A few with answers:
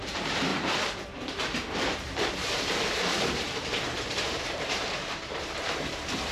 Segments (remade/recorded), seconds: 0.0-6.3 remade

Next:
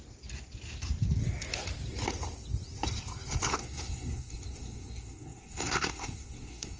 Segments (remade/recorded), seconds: 0.0-3.5 recorded; 3.5-6.8 remade

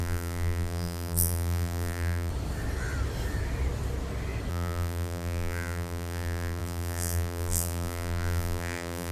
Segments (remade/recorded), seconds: 0.0-2.3 remade; 2.3-4.5 recorded; 4.5-9.1 remade

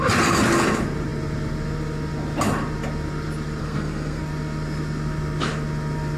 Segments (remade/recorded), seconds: 0.0-3.6 recorded; 3.6-4.2 remade; 4.2-6.2 recorded